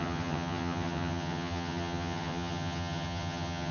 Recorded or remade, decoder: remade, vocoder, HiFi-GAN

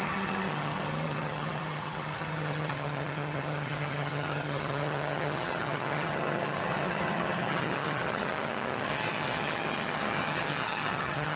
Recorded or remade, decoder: remade, vocoder, HiFi-GAN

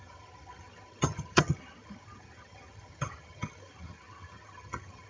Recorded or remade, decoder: remade, vocoder, HiFi-GAN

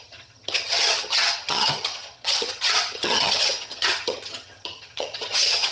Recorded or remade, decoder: remade, vocoder, HiFi-GAN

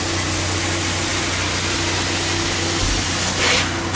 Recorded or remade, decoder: recorded